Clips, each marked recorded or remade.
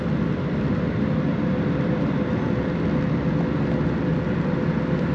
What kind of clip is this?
remade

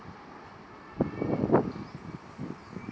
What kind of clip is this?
recorded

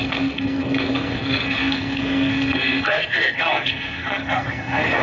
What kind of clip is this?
remade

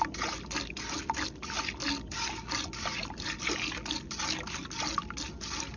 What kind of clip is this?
recorded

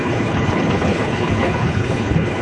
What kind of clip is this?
remade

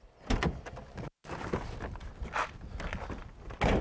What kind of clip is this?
recorded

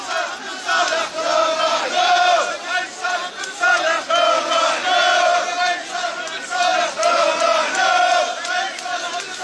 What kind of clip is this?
recorded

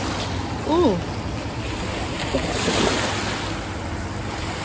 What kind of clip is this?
recorded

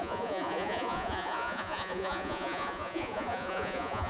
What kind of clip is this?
remade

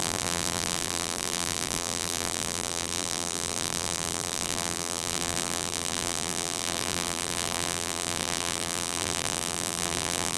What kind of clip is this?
remade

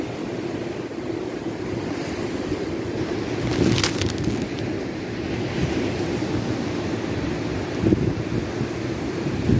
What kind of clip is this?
recorded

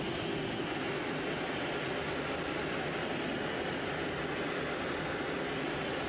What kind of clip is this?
recorded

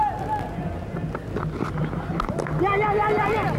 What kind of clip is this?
recorded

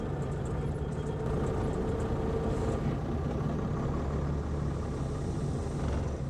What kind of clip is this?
recorded